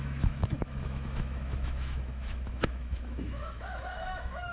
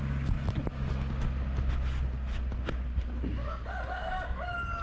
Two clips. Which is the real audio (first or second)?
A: second